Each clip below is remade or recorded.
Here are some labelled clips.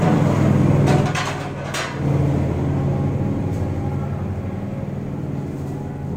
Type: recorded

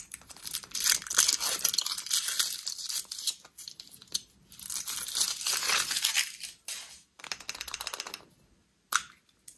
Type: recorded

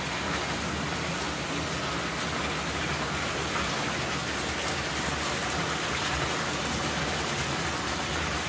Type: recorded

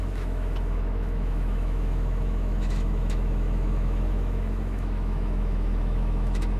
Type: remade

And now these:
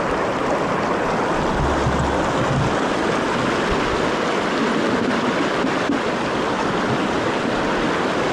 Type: recorded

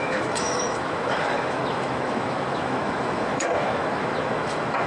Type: remade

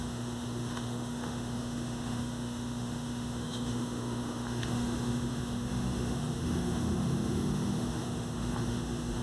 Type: remade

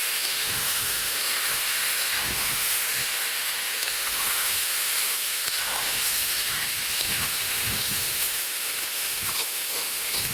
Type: remade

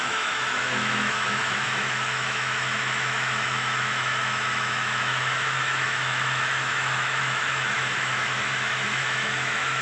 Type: remade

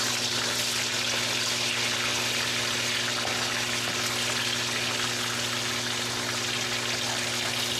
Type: recorded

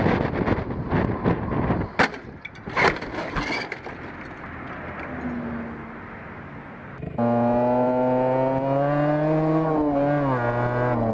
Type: recorded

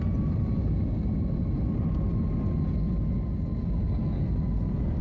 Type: recorded